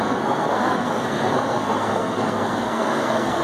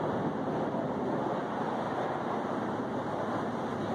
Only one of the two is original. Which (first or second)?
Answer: second